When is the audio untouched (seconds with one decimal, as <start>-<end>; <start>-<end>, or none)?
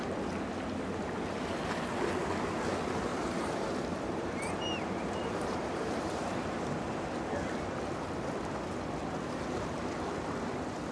0.0-3.1; 7.2-10.9